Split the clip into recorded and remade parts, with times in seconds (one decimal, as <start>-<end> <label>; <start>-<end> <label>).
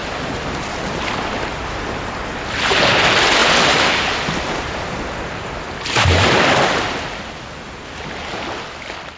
0.0-9.2 recorded